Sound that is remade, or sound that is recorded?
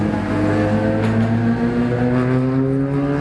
recorded